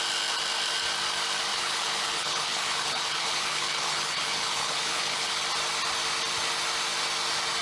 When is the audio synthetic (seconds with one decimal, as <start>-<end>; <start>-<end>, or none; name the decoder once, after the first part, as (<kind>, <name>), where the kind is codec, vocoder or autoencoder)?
1.5-5.3 (codec, HILCodec)